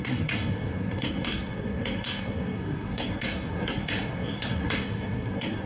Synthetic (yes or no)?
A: yes